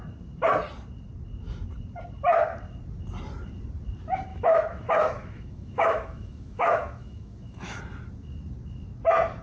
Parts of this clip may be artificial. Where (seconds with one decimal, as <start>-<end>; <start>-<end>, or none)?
4.3-7.8